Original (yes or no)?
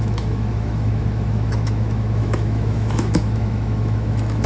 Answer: no